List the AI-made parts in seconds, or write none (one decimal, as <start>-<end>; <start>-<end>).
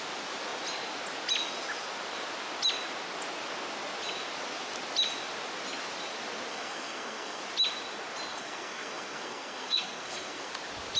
6.5-7.4; 8.3-10.5